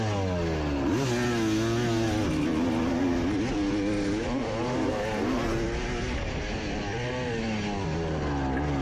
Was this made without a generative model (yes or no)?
yes